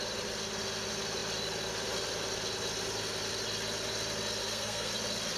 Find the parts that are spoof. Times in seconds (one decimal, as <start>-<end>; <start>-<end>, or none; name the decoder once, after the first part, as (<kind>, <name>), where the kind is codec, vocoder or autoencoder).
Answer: 4.4-4.9 (codec, SNAC)